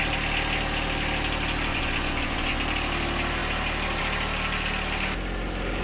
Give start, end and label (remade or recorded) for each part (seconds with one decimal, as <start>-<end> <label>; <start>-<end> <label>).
0.0-1.7 recorded; 1.7-2.6 remade; 2.6-5.8 recorded